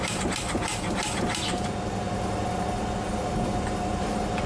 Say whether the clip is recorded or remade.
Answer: recorded